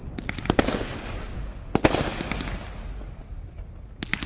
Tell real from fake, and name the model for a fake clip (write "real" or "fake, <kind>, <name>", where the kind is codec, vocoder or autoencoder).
real